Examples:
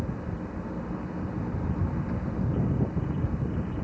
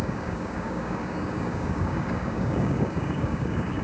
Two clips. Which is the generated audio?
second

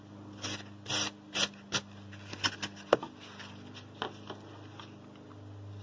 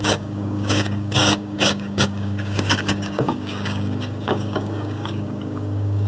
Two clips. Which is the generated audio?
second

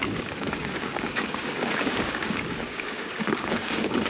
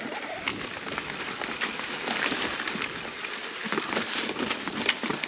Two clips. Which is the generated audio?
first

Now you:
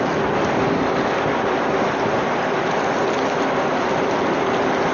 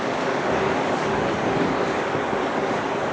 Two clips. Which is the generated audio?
second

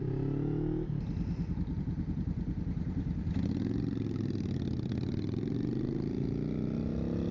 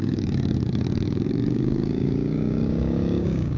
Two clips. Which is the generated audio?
second